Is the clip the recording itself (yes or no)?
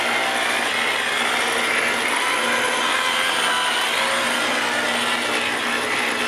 yes